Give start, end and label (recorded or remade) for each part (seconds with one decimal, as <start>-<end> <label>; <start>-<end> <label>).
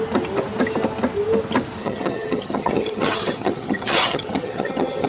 0.0-1.8 recorded; 1.8-5.1 remade